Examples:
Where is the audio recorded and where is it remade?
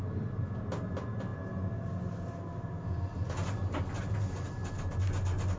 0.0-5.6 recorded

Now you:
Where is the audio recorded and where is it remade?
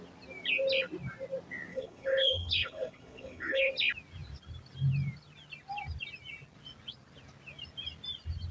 0.0-1.7 recorded; 1.7-3.7 remade; 3.7-8.5 recorded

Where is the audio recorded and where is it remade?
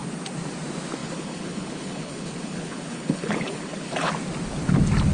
0.0-1.0 recorded; 1.0-4.1 remade; 4.1-5.1 recorded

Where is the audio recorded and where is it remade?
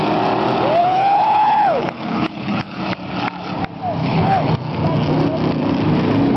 0.0-0.8 recorded; 0.8-2.8 remade; 2.8-4.0 recorded; 4.0-4.5 remade; 4.5-6.4 recorded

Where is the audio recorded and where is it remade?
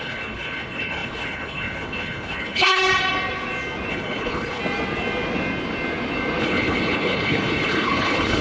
0.0-2.8 remade; 2.8-3.9 recorded; 3.9-4.6 remade; 4.6-6.4 recorded; 6.4-8.4 remade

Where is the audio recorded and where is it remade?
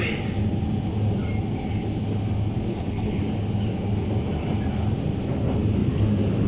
0.0-2.7 recorded; 2.7-3.2 remade; 3.2-6.5 recorded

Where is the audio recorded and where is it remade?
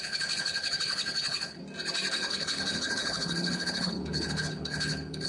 0.0-1.6 remade; 1.6-2.1 recorded; 2.1-5.3 remade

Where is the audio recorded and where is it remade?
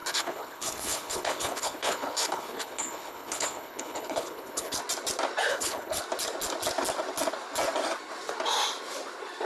0.0-4.8 remade; 4.8-5.5 recorded; 5.5-6.0 remade; 6.0-9.5 recorded